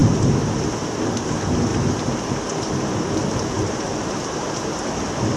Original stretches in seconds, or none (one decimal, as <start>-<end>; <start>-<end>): 0.0-5.4